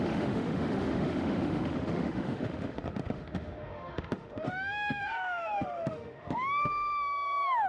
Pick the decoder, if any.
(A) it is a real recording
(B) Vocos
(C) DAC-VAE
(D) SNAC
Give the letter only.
C